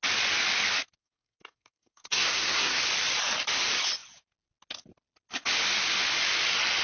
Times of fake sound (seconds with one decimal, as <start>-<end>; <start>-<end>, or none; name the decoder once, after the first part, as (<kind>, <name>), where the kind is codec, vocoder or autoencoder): 1.0-2.8 (codec, SNAC)